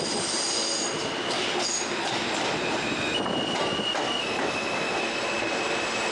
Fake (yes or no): no